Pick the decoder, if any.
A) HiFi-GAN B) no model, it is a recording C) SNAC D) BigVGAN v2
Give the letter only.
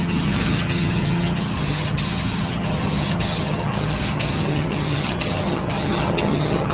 A